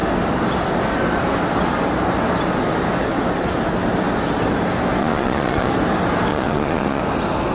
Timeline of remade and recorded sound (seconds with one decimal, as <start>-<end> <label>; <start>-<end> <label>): 0.0-5.0 recorded; 5.0-5.7 remade; 5.7-6.3 recorded; 6.3-7.0 remade; 7.0-7.5 recorded